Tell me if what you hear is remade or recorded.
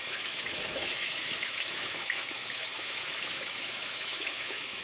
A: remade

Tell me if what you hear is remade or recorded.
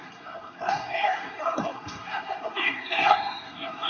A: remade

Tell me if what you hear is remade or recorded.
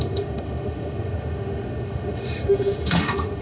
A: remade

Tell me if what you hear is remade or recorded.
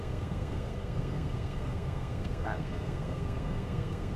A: remade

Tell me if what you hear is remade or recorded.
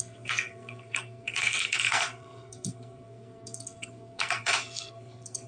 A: remade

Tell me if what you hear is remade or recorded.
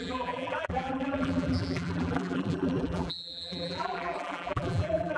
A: remade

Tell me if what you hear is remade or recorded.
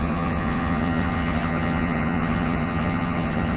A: remade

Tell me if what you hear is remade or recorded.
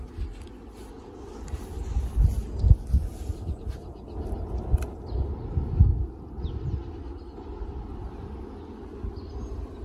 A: recorded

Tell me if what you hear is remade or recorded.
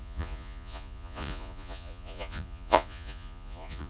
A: remade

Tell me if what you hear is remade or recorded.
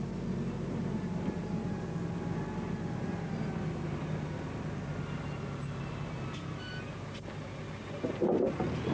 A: recorded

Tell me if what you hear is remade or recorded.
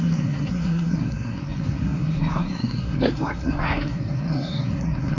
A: remade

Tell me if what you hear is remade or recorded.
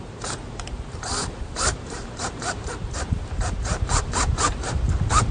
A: remade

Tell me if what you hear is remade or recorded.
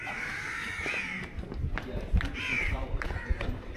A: remade